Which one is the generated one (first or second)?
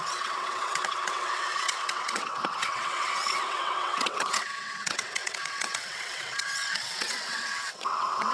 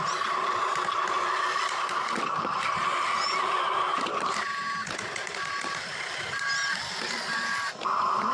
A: first